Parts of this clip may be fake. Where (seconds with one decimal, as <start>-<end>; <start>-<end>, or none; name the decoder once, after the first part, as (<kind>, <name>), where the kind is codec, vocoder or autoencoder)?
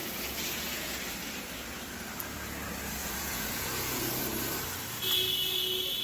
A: 0.0-1.0 (vocoder, Vocos); 3.0-4.2